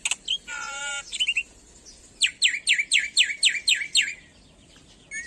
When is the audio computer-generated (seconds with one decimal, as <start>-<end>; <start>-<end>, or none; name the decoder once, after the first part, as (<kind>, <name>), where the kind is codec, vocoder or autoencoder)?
none